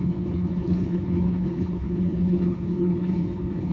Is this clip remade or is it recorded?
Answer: remade